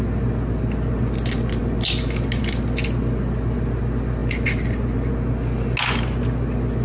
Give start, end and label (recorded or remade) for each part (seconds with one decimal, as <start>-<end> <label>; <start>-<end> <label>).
0.0-6.8 recorded